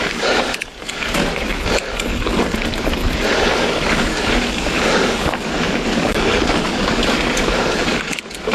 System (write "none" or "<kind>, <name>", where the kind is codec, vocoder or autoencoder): codec, DAC